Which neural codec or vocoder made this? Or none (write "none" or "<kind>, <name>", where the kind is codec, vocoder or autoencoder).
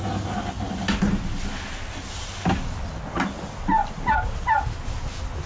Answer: none